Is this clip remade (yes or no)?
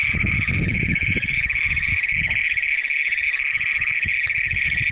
yes